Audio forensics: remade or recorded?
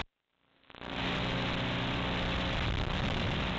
recorded